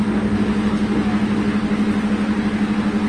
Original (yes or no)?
yes